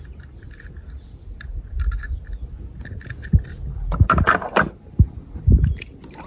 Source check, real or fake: real